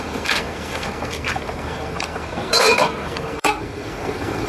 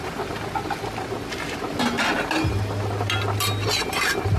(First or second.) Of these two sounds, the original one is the second